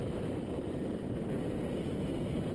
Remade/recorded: remade